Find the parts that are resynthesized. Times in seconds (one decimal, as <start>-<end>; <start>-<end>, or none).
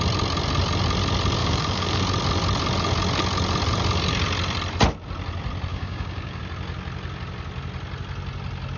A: 1.4-2.0; 5.7-6.4